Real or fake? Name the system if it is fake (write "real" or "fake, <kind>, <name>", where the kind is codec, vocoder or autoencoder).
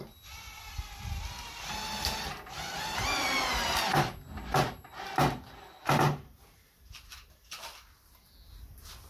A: real